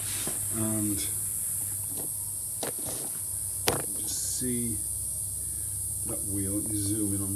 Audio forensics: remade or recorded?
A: recorded